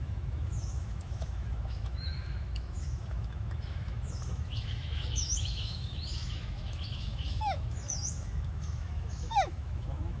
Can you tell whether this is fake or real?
fake